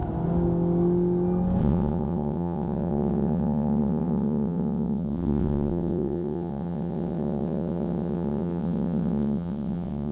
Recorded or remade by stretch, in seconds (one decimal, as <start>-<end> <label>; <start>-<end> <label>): 0.0-1.6 recorded; 1.6-10.1 remade